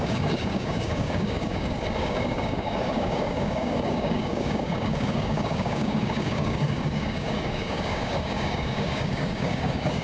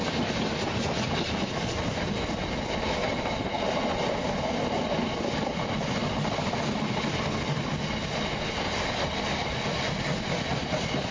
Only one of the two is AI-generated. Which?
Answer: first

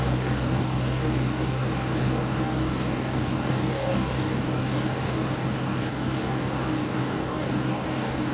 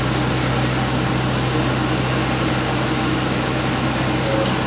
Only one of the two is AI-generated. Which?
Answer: first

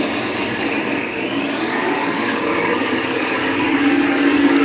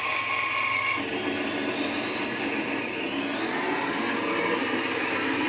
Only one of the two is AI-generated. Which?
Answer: first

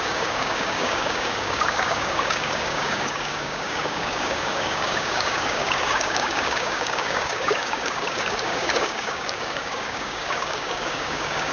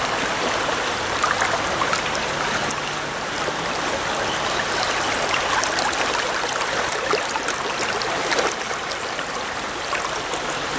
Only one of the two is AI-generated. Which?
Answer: first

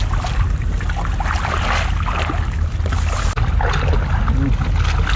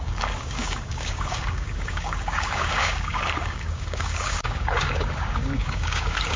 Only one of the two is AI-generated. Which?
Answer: second